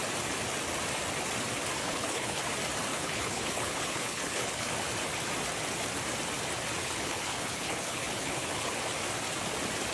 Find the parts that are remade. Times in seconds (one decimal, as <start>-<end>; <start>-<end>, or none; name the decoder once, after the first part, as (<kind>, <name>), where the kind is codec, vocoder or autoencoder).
1.8-2.4 (codec, HILCodec); 2.9-4.7; 6.8-8.7